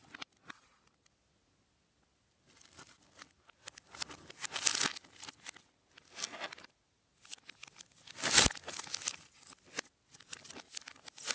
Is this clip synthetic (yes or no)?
no